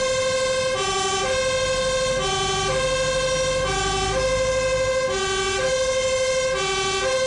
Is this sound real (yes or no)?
yes